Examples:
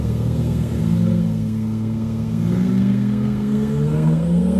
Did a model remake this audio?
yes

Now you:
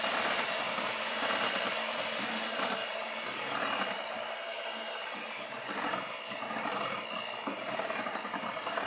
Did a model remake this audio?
no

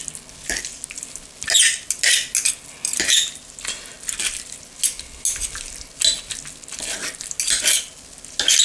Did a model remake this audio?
no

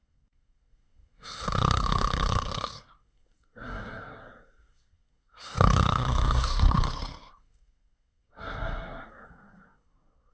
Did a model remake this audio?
yes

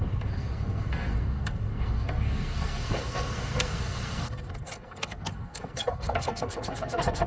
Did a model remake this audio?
yes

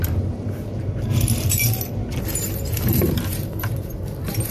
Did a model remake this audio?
yes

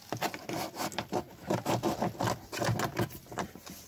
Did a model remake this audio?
no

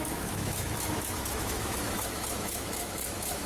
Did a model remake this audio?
yes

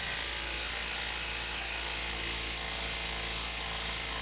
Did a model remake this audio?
no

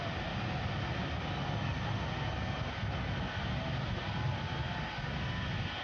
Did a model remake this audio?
no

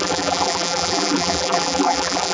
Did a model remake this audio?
yes